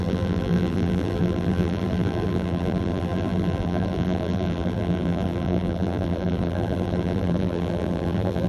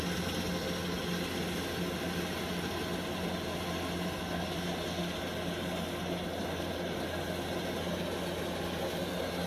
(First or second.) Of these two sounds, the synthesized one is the first